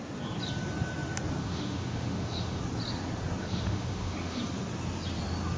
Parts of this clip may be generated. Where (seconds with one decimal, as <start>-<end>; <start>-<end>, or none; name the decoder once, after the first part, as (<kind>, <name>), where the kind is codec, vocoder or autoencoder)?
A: 1.4-2.6 (autoencoder, DAC-VAE); 3.4-4.4